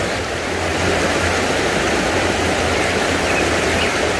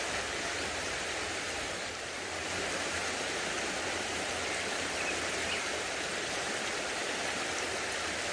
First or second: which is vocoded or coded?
second